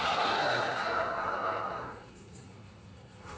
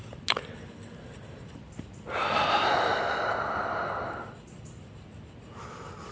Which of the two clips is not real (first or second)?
first